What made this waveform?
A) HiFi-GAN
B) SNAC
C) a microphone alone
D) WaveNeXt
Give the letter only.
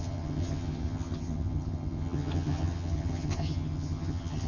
A